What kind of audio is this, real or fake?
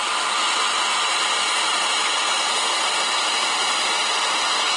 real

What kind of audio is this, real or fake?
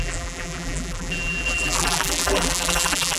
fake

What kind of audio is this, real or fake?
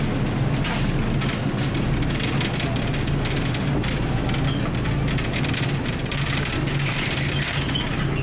real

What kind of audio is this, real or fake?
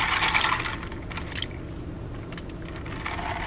real